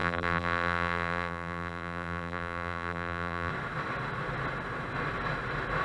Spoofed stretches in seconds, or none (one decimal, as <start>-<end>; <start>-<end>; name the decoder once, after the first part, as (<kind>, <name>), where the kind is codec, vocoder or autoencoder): 0.0-3.5 (vocoder, BigVGAN v2)